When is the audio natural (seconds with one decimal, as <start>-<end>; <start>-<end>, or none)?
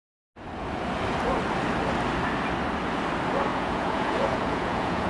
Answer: 0.0-3.5